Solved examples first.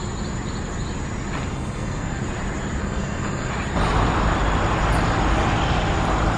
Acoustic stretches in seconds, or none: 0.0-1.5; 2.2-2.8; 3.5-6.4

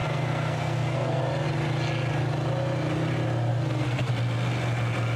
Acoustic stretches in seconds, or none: 1.2-3.5; 4.1-5.2

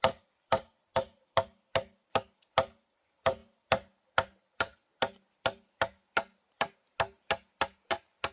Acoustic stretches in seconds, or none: 0.0-8.3

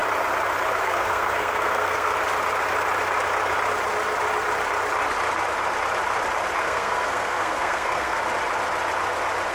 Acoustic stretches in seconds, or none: 0.0-0.8; 2.1-6.6; 8.2-9.5

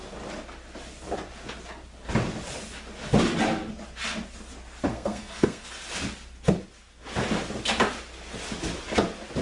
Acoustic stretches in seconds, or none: 0.0-4.9; 5.7-9.4

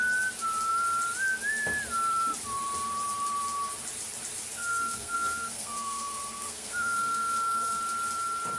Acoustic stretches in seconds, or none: 0.0-4.5; 7.8-8.6

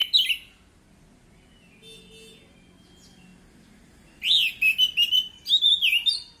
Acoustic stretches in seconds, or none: 0.0-6.4